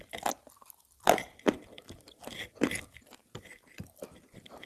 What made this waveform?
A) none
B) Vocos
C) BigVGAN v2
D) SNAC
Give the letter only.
A